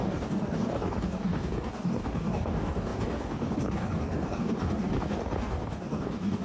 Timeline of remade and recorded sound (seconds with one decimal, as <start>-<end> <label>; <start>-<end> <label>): 0.0-6.4 remade